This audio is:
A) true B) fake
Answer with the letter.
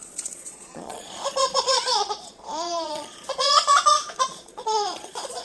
B